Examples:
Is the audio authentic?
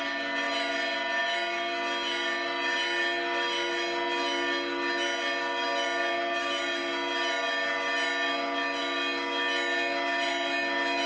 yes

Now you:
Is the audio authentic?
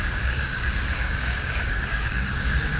no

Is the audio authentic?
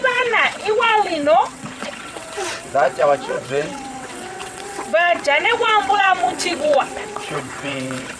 no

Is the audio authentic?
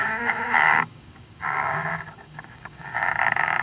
no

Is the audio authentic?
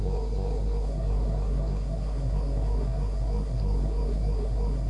no